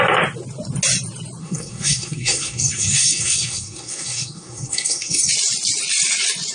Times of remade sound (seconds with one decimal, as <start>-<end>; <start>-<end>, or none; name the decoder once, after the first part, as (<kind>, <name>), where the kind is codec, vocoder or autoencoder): 1.4-5.3 (codec, SNAC)